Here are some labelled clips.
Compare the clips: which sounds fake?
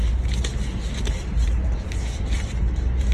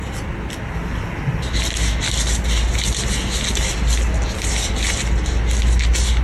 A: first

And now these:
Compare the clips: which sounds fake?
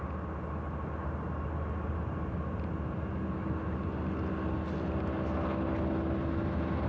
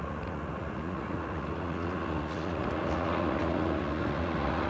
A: second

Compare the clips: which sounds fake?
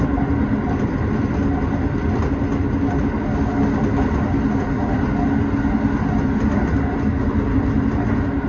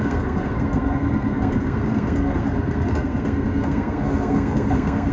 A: second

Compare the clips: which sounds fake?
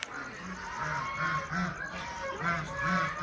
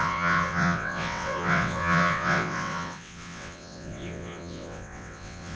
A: second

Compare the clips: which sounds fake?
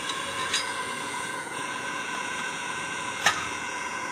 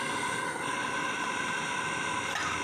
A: first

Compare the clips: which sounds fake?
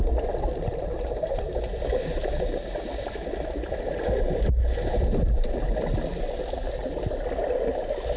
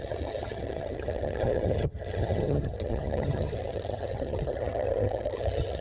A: second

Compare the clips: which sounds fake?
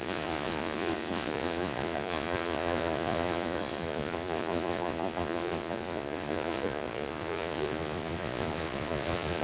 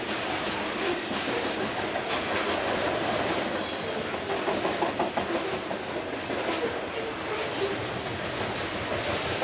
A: first